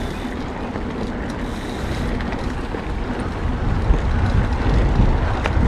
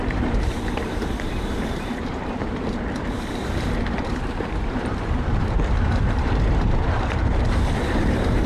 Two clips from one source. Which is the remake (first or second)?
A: second